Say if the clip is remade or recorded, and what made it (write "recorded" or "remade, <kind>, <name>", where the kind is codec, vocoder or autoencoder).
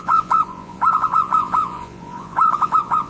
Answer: remade, vocoder, Vocos